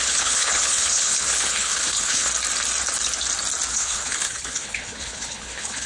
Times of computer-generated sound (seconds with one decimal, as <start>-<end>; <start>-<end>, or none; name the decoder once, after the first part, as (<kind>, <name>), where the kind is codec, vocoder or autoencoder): 0.0-2.3 (codec, HILCodec); 3.7-5.9